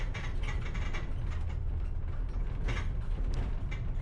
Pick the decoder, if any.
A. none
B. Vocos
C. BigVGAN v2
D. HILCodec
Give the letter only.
A